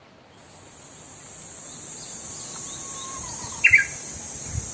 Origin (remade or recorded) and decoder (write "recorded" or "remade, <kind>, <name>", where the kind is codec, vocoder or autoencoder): recorded